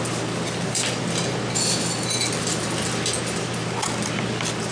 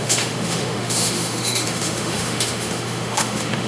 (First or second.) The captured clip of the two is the first